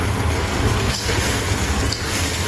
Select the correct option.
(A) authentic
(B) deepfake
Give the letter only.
B